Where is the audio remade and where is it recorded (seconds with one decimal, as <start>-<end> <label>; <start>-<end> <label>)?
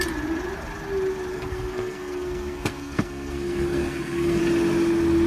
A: 0.0-1.3 recorded; 1.3-4.4 remade; 4.4-5.3 recorded